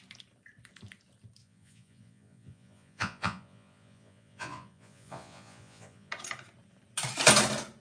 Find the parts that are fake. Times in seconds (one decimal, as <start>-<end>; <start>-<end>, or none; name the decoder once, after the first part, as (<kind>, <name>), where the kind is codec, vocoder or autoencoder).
1.4-6.1 (vocoder, Vocos)